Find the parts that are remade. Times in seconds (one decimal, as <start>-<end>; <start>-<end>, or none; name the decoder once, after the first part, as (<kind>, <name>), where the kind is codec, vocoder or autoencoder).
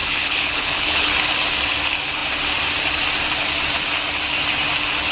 0.0-1.1 (codec, HILCodec)